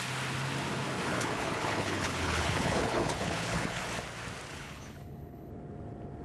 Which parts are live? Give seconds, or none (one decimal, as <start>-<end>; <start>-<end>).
0.0-1.1; 3.8-4.5; 5.5-6.2